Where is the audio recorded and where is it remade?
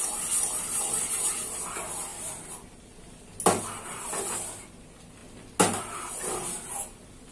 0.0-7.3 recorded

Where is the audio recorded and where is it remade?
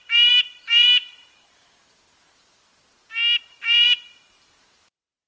0.0-2.7 remade; 2.7-3.4 recorded; 3.4-5.3 remade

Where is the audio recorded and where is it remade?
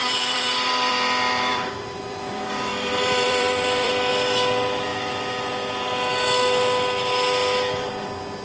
0.0-0.9 remade; 0.9-1.5 recorded; 1.5-4.1 remade; 4.1-8.4 recorded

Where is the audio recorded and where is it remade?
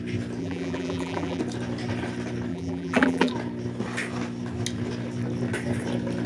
0.0-0.4 recorded; 0.4-1.4 remade; 1.4-2.5 recorded; 2.5-3.3 remade; 3.3-6.3 recorded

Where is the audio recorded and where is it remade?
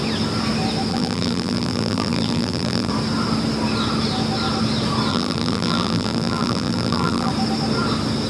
0.0-0.9 recorded; 0.9-2.9 remade; 2.9-5.1 recorded; 5.1-7.3 remade; 7.3-8.3 recorded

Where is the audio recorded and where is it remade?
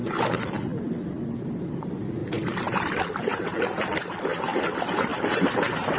0.0-5.1 recorded; 5.1-6.0 remade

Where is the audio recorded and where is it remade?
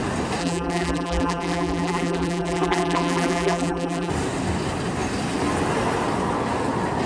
0.0-0.4 recorded; 0.4-4.1 remade; 4.1-7.1 recorded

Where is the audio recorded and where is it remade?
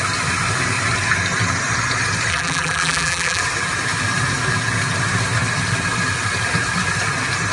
0.0-2.3 recorded; 2.3-3.4 remade; 3.4-7.5 recorded